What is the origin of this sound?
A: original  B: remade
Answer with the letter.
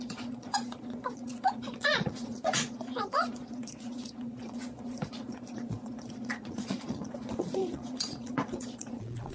B